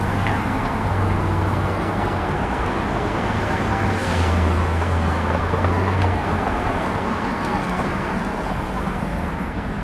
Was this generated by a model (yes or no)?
yes